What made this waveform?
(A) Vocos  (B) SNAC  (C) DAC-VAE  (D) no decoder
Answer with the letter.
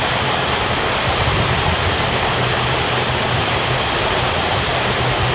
D